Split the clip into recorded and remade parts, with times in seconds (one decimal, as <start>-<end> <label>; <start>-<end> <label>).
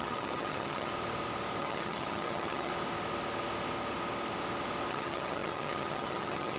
0.0-0.9 remade; 0.9-1.6 recorded; 1.6-2.7 remade; 2.7-4.9 recorded; 4.9-6.6 remade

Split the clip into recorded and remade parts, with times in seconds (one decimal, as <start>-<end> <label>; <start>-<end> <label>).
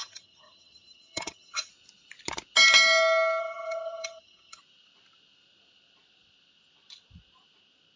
0.0-1.7 remade; 1.7-3.4 recorded; 3.4-4.6 remade; 4.6-8.0 recorded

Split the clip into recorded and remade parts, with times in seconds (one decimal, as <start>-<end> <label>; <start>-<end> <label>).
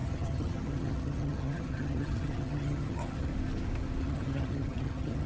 0.0-3.3 remade; 3.3-4.0 recorded; 4.0-5.3 remade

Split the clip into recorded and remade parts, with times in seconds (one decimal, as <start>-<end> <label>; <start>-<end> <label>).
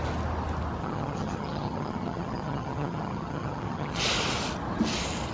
0.0-0.8 recorded; 0.8-4.0 remade; 4.0-5.3 recorded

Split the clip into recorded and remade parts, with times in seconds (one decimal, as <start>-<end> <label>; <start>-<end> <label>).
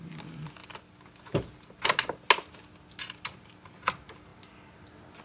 0.0-5.2 recorded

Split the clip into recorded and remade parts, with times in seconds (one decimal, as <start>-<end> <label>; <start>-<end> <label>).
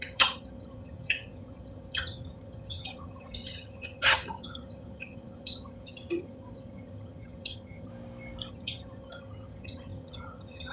0.0-7.9 remade; 7.9-8.5 recorded; 8.5-10.7 remade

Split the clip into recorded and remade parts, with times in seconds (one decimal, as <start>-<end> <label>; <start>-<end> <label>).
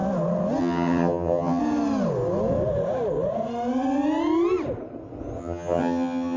0.0-0.6 recorded; 0.6-1.6 remade; 1.6-5.4 recorded; 5.4-6.4 remade